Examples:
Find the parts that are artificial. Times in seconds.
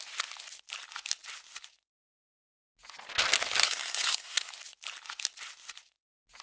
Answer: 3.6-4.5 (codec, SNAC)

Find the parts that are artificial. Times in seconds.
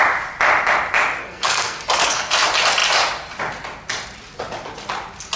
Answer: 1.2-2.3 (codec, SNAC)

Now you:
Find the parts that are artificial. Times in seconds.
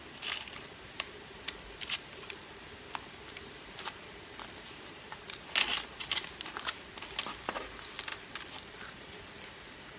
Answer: none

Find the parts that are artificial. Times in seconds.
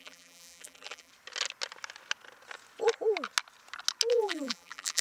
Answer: 0.0-1.1 (vocoder, BigVGAN v2); 4.1-5.0